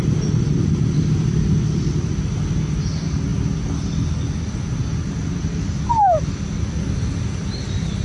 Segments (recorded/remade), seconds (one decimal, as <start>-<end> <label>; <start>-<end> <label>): 0.0-8.0 recorded